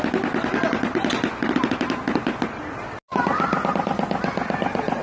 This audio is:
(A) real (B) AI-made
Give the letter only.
A